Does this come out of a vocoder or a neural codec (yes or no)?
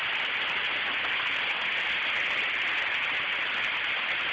no